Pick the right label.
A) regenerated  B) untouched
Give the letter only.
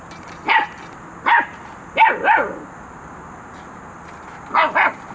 B